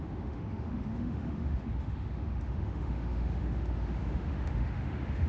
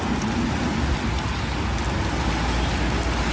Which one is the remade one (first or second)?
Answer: first